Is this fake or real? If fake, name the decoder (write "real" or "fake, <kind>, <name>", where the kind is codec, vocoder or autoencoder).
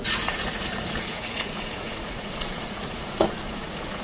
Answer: fake, vocoder, Vocos